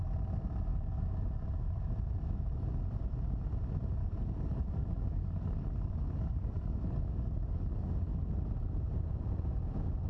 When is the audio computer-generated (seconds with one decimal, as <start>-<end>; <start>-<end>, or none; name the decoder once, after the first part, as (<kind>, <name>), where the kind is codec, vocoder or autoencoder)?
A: 0.7-1.9 (codec, DAC); 4.0-8.3